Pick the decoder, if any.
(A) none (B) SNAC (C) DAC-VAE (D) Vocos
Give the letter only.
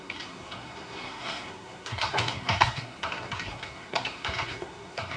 B